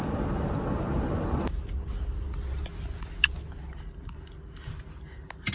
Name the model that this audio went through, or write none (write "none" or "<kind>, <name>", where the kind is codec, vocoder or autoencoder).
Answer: none